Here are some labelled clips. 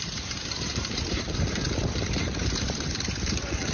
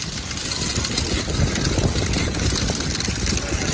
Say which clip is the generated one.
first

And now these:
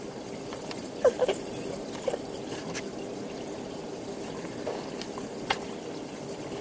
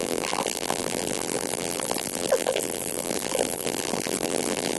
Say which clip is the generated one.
second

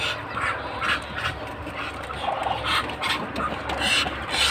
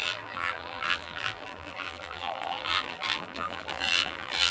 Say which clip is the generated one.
second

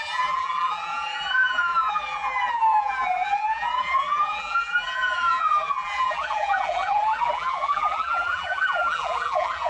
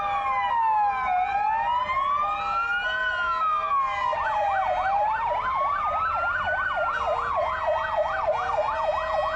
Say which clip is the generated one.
first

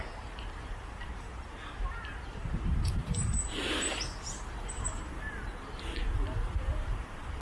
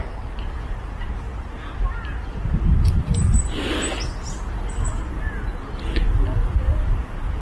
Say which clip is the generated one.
first